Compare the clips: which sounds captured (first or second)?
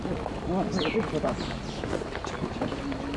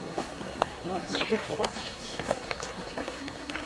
first